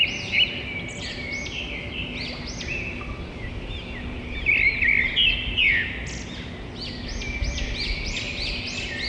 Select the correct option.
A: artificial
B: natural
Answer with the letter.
B